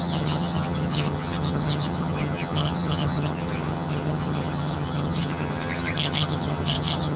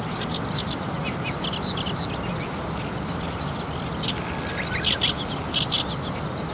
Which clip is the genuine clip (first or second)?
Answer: second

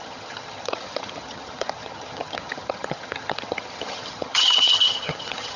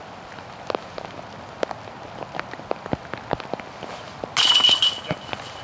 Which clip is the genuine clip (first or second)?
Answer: second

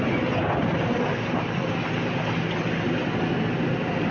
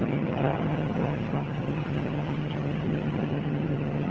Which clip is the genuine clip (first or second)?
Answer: first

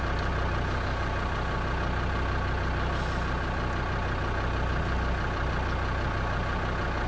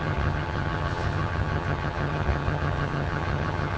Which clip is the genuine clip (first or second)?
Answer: first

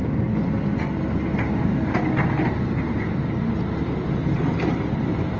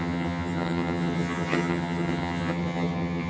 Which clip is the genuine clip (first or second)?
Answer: first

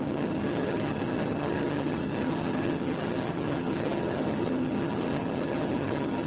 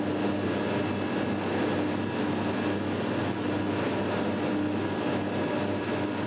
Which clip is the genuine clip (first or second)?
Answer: second